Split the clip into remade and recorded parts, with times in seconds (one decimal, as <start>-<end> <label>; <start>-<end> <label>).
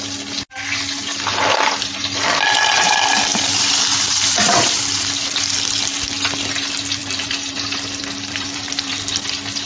0.0-3.3 recorded; 3.3-5.8 remade; 5.8-7.0 recorded; 7.0-9.0 remade; 9.0-9.7 recorded